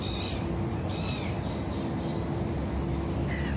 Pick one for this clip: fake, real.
real